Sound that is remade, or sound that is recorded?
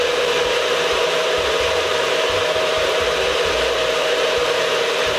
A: remade